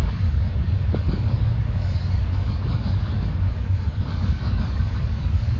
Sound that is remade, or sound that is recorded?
remade